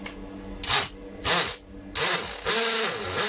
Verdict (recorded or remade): recorded